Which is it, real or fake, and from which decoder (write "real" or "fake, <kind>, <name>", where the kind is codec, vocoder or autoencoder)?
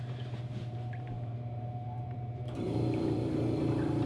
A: fake, vocoder, BigVGAN v2